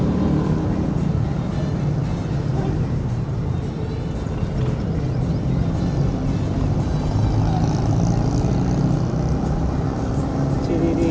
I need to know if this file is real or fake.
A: real